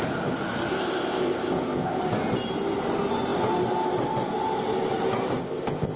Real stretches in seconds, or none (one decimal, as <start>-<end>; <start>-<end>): 0.0-0.7; 2.0-5.4